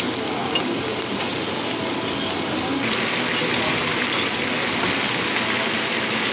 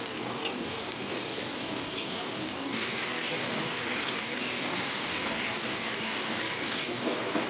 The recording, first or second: first